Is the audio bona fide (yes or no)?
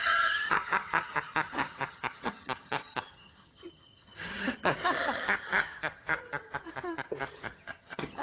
no